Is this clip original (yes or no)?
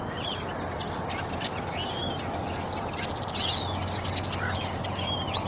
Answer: yes